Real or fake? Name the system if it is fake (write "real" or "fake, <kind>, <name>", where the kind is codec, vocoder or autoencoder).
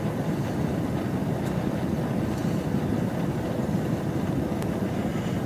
real